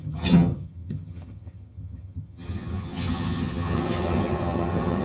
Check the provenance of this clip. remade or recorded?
remade